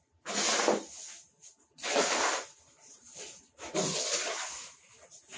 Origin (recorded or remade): recorded